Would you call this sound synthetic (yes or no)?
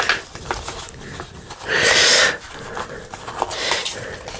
no